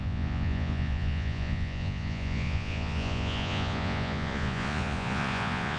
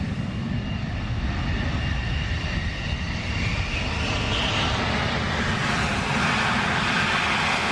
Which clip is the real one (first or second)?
second